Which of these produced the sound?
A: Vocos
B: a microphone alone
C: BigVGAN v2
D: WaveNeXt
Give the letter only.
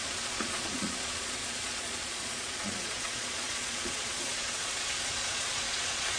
A